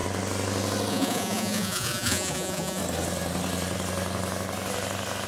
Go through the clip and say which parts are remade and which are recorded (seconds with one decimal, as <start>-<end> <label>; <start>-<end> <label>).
0.0-0.9 recorded; 0.9-2.8 remade; 2.8-5.3 recorded